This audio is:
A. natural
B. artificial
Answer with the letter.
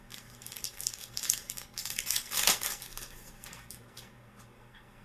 B